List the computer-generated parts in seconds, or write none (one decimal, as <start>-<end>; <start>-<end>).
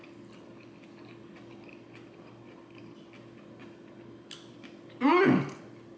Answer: none